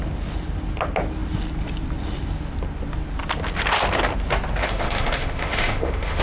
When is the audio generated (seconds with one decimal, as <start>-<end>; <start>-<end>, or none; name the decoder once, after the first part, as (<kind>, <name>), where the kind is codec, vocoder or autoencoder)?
4.6-6.2 (autoencoder, DAC-VAE)